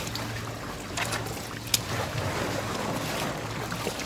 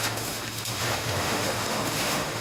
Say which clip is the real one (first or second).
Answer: first